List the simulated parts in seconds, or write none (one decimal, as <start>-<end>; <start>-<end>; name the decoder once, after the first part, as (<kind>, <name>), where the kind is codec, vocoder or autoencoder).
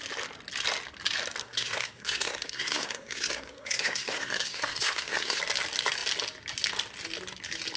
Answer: 1.4-5.4 (codec, SNAC)